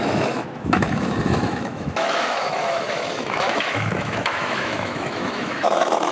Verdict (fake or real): fake